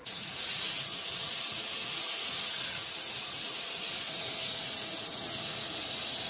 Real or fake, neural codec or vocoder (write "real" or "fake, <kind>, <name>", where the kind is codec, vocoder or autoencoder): fake, vocoder, Vocos